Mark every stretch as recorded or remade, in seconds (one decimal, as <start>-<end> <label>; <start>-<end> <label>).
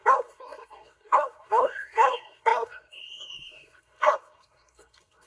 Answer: 0.0-5.3 remade